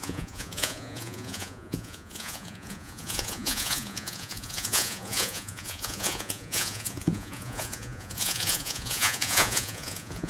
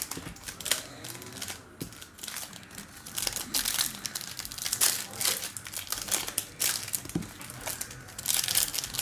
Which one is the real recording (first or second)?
second